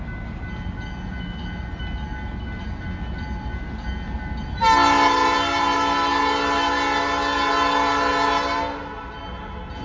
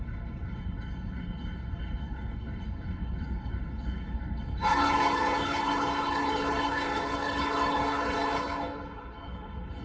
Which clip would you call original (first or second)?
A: first